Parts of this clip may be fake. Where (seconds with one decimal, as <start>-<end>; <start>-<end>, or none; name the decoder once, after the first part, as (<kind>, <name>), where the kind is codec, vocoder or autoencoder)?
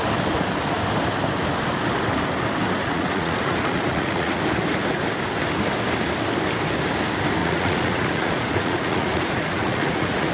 2.8-4.4 (vocoder, Vocos); 7.4-10.3